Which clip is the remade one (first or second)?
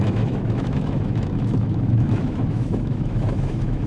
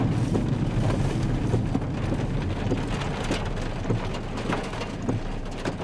first